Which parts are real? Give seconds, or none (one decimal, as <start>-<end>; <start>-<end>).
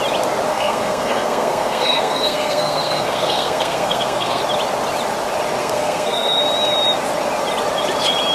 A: 0.0-0.5; 4.4-5.6; 6.4-8.3